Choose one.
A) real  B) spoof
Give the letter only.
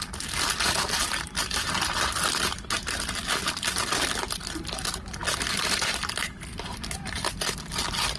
A